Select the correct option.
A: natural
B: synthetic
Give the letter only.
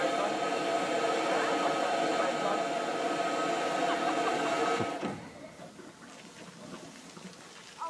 A